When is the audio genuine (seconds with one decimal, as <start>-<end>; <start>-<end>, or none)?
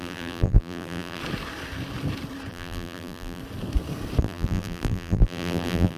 1.2-2.5; 3.4-4.2